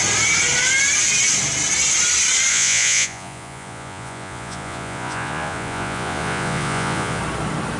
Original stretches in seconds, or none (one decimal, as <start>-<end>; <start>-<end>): 0.0-2.5; 7.2-7.8